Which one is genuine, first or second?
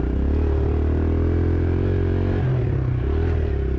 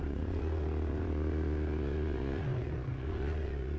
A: first